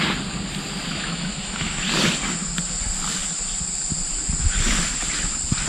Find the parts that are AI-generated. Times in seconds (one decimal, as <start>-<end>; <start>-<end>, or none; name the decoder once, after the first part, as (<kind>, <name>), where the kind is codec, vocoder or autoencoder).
0.9-1.8 (autoencoder, DAC-VAE)

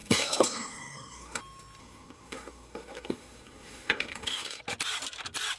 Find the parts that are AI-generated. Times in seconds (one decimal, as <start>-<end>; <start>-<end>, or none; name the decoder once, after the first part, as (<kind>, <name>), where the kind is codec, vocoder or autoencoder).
0.0-1.4 (codec, SNAC); 1.8-4.6

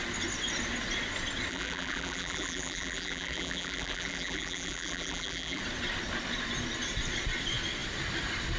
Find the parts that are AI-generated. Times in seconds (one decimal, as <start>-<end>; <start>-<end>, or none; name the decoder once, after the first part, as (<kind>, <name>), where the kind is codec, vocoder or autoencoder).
1.5-5.6 (vocoder, BigVGAN v2)

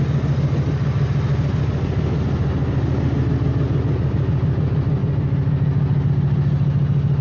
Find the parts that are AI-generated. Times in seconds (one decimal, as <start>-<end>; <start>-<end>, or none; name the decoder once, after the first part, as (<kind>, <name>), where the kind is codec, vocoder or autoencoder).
none

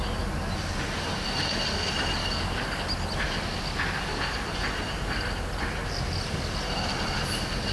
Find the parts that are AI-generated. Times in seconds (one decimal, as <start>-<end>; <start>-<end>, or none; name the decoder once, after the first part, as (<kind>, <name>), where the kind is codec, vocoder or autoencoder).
2.2-2.8 (codec, DAC)